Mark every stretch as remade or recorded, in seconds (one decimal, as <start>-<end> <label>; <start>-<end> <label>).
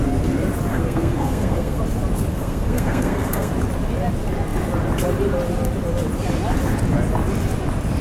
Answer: 0.0-0.7 recorded; 0.7-1.8 remade; 1.8-2.3 recorded; 2.3-3.5 remade; 3.5-8.0 recorded